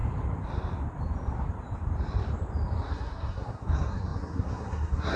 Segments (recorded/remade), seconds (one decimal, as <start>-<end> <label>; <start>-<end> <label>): 0.0-2.9 recorded; 2.9-5.2 remade

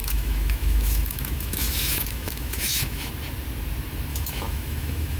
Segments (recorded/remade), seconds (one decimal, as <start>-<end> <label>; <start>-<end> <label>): 0.0-3.1 remade; 3.1-4.1 recorded; 4.1-5.2 remade

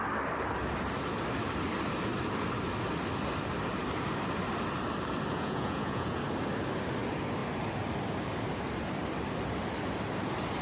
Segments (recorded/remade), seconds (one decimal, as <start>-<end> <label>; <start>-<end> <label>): 0.0-5.3 recorded; 5.3-6.2 remade; 6.2-10.6 recorded

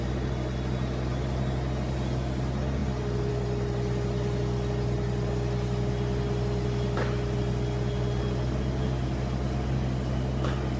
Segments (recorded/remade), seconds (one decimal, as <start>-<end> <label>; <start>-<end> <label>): 0.0-10.8 recorded

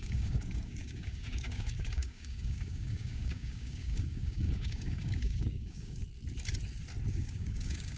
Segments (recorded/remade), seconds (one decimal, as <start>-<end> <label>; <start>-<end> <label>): 0.0-6.0 remade; 6.0-7.1 recorded; 7.1-8.0 remade

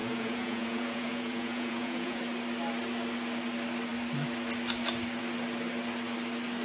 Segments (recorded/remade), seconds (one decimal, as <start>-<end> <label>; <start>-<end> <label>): 0.0-2.2 remade; 2.2-6.6 recorded

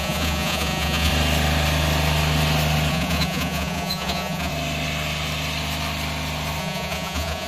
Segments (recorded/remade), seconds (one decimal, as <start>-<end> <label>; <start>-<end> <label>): 0.0-1.1 remade; 1.1-2.9 recorded; 2.9-4.5 remade; 4.5-6.6 recorded; 6.6-7.5 remade